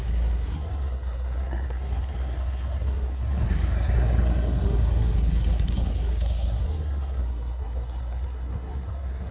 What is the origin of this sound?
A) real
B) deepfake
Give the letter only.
B